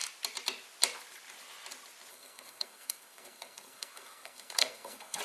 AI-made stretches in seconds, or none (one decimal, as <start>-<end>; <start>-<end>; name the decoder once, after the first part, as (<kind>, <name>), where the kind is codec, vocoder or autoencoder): 2.1-5.2 (codec, SNAC)